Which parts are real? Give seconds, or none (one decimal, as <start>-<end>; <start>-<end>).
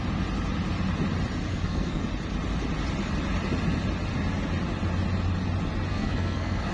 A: 0.0-1.5; 2.0-5.9